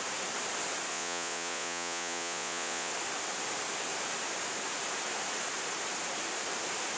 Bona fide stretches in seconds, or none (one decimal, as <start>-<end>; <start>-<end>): 0.0-0.9; 2.9-7.0